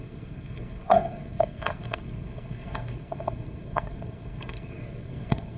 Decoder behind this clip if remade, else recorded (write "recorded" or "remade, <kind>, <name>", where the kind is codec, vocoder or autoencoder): remade, codec, SNAC